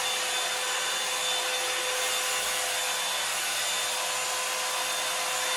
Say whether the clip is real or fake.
real